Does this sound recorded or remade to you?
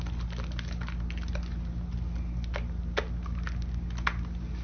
recorded